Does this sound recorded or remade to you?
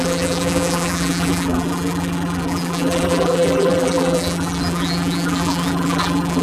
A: remade